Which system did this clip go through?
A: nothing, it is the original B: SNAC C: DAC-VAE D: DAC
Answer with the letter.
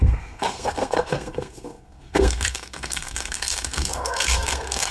B